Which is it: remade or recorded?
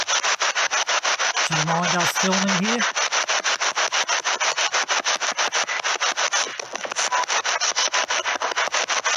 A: recorded